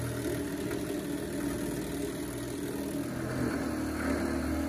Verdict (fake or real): real